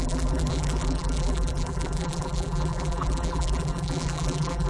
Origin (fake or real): fake